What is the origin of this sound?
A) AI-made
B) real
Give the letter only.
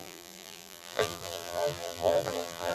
A